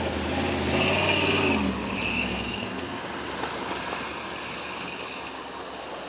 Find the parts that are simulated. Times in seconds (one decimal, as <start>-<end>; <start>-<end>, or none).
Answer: 2.1-3.0